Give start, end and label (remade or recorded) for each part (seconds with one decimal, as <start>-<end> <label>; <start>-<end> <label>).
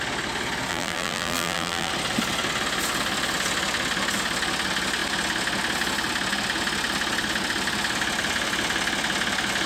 0.0-0.7 recorded; 0.7-1.9 remade; 1.9-9.7 recorded